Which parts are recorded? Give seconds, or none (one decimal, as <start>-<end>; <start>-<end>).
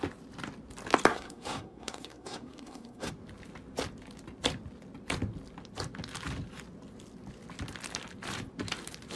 0.0-1.1; 3.1-9.2